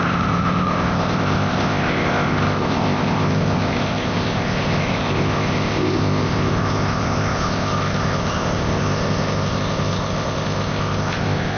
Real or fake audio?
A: fake